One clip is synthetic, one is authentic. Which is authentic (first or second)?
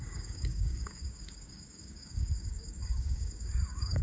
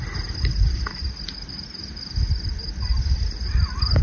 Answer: second